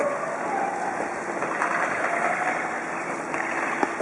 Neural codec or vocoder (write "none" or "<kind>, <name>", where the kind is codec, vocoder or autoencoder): none